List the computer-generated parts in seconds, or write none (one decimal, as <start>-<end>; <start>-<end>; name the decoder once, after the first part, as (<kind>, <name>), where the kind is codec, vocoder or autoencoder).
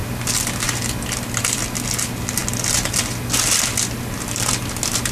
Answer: none